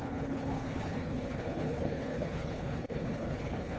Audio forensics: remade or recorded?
remade